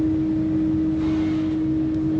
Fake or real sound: real